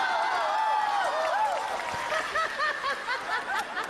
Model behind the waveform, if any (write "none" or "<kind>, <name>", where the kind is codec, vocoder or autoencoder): none